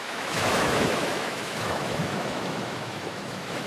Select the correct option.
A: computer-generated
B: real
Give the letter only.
A